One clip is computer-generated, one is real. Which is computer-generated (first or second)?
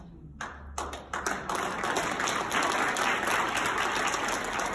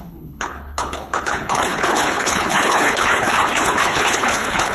second